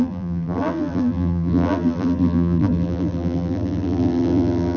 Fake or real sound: fake